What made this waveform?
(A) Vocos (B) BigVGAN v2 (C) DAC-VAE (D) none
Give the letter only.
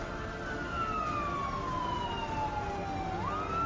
D